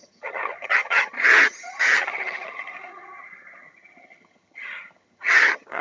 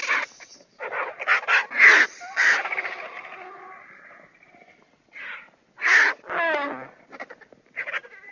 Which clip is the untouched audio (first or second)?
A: second